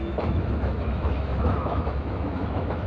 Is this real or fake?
fake